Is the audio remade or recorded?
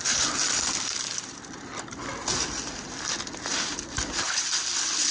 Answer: recorded